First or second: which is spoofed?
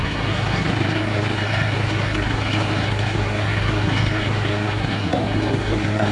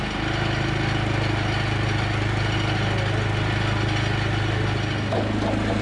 first